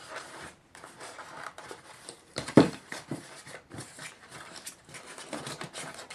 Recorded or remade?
remade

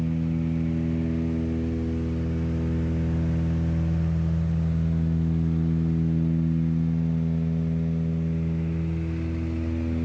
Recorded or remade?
recorded